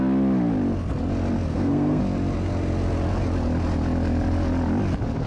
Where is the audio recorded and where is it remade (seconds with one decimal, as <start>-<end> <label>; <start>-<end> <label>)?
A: 0.0-1.5 recorded; 1.5-2.0 remade; 2.0-5.3 recorded